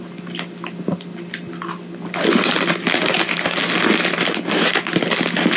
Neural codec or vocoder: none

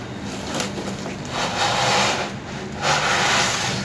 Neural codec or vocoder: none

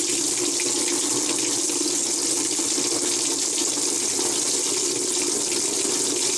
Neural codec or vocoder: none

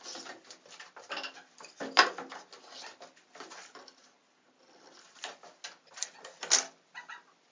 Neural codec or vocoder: none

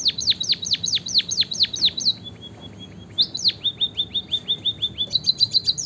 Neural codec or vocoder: none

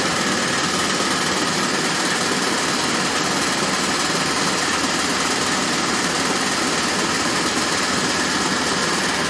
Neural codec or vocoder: none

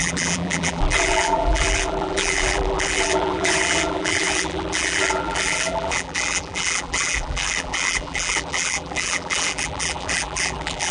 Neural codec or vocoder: vocoder, BigVGAN v2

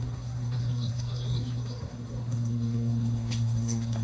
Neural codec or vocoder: codec, SNAC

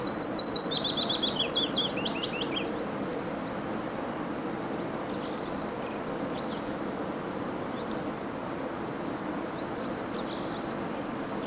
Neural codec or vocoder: none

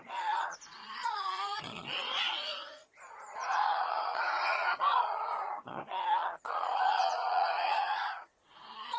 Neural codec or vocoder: vocoder, Vocos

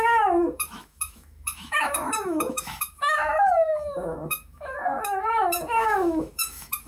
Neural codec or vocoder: autoencoder, DAC-VAE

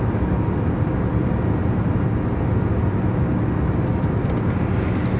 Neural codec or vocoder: none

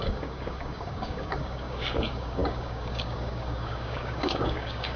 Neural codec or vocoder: codec, DAC